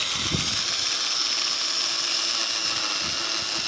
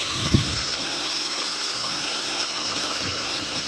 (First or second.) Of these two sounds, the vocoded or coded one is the second